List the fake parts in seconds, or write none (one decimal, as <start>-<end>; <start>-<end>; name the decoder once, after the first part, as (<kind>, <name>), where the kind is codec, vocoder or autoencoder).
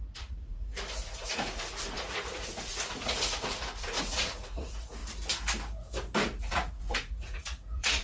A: 0.0-5.0 (vocoder, Vocos); 6.4-8.0